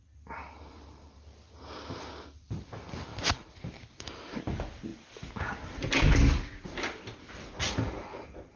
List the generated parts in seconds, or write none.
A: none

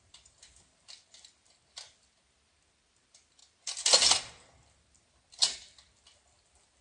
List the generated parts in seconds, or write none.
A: none